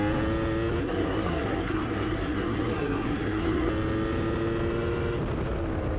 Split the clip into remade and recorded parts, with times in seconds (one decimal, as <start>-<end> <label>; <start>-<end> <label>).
0.0-0.8 recorded; 0.8-3.7 remade; 3.7-6.0 recorded